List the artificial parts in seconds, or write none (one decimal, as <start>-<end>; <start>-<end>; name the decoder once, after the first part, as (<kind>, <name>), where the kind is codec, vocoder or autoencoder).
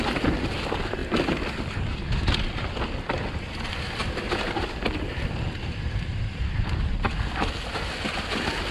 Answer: none